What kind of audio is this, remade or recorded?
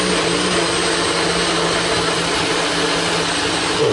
recorded